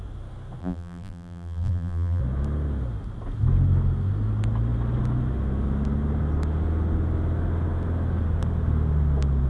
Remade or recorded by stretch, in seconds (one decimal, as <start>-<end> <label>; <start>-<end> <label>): 0.0-0.6 recorded; 0.6-2.2 remade; 2.2-9.5 recorded